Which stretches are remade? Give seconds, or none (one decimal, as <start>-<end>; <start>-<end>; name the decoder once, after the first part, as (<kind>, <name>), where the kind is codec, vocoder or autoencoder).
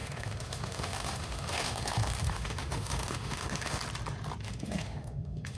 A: 0.0-3.8 (autoencoder, DAC-VAE); 4.4-5.6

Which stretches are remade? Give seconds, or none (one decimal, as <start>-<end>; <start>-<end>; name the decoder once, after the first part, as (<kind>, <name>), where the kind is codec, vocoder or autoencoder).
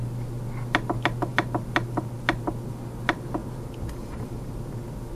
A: 3.4-5.1 (vocoder, BigVGAN v2)